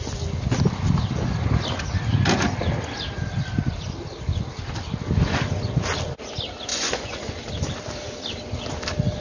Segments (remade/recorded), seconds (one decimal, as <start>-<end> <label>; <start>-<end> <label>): 0.0-6.7 recorded; 6.7-7.3 remade; 7.3-9.2 recorded